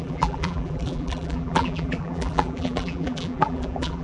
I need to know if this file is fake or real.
fake